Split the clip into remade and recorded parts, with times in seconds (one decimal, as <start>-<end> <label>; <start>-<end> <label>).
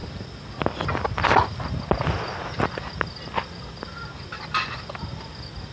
0.0-5.7 recorded